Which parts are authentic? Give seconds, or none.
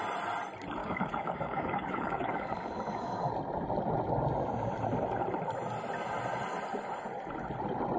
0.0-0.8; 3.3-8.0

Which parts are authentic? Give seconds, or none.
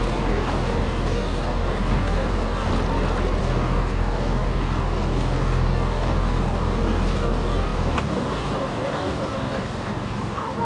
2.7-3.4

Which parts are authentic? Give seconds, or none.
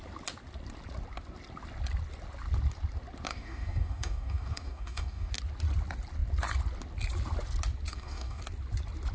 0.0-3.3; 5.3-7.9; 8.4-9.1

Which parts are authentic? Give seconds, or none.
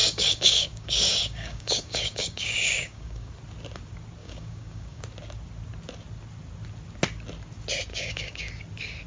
3.3-4.2; 5.0-7.9; 8.5-9.1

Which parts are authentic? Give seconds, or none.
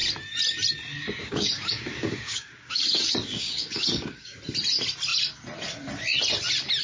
0.0-1.2; 4.4-6.8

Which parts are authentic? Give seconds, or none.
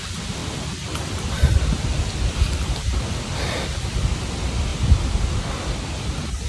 0.0-6.5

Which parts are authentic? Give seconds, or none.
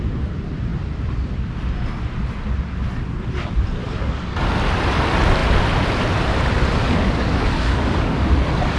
0.0-3.8; 4.5-6.8; 8.3-8.8